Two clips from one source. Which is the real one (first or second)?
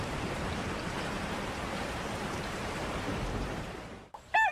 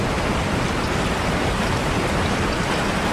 second